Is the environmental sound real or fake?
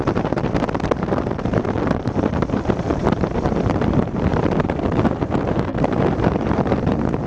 fake